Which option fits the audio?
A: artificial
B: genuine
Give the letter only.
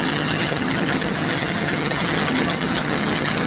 A